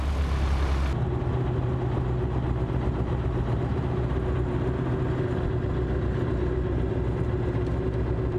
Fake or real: real